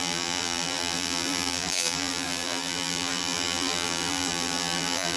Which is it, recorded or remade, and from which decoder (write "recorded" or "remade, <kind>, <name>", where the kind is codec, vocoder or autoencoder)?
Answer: remade, vocoder, BigVGAN v2